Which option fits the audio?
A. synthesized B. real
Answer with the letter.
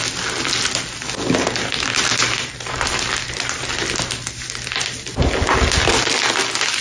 B